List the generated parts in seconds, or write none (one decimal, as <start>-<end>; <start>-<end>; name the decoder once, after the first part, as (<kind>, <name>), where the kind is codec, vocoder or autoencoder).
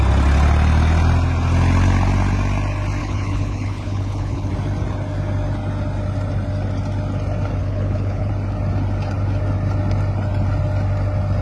3.0-4.5 (codec, HILCodec); 7.6-8.3